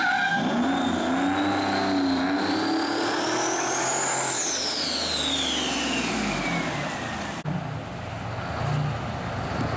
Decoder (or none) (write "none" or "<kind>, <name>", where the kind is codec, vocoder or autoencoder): none